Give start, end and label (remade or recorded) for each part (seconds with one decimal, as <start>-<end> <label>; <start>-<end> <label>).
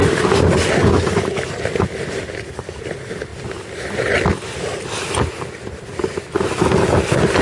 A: 0.0-7.4 recorded